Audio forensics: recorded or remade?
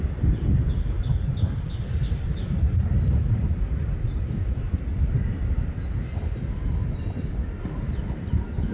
recorded